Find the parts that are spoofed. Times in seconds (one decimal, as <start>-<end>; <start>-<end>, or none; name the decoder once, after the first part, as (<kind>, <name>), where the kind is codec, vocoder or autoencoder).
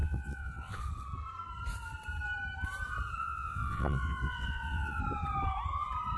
0.0-0.8 (vocoder, WaveNeXt); 3.2-5.0